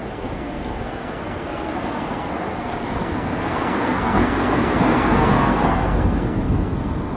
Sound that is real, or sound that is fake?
fake